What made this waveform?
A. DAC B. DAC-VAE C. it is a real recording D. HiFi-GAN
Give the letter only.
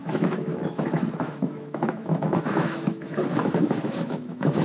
B